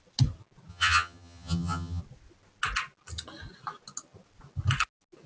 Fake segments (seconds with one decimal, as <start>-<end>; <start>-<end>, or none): 0.7-2.0